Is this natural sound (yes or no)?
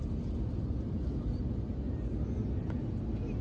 yes